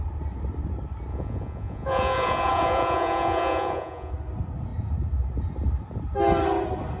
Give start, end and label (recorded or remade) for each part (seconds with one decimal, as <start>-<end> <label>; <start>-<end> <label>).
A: 0.0-1.1 recorded; 1.1-4.1 remade; 4.1-7.0 recorded